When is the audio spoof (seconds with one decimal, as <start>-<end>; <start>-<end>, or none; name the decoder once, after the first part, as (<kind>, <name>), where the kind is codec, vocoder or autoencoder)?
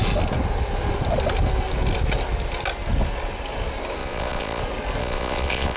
4.0-4.6 (vocoder, Vocos); 5.0-5.8